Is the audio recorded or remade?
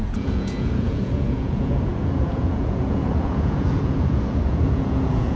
remade